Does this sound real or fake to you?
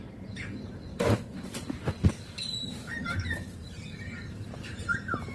fake